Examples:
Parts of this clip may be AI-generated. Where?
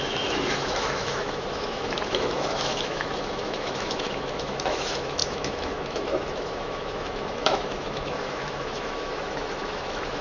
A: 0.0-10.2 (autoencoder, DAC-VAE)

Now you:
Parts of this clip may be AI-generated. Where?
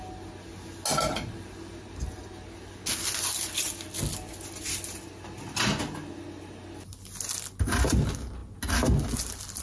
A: none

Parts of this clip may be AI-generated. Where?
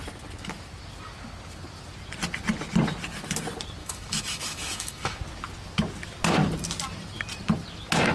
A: 3.8-5.2 (autoencoder, DAC-VAE)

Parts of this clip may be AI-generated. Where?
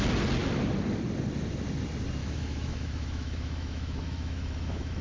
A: 2.2-5.0 (autoencoder, DAC-VAE)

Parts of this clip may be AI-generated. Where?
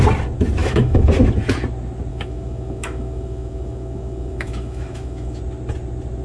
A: 0.6-1.1 (autoencoder, DAC-VAE); 2.1-5.4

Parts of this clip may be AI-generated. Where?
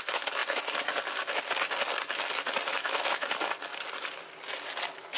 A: 2.7-3.3 (autoencoder, DAC-VAE)